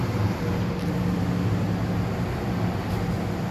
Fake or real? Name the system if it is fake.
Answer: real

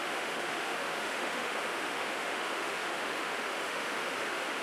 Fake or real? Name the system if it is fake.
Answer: fake, autoencoder, DAC-VAE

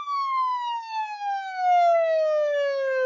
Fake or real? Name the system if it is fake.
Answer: fake, codec, DAC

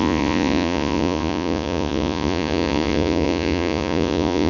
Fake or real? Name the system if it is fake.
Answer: fake, vocoder, Vocos